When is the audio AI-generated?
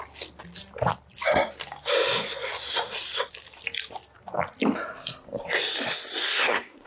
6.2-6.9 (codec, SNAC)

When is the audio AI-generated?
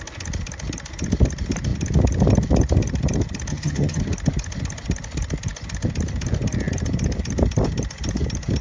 3.5-4.0 (vocoder, HiFi-GAN)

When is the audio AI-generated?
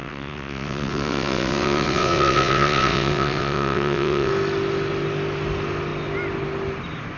0.0-4.3 (vocoder, WaveNeXt)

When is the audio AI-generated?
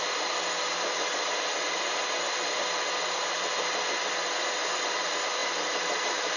none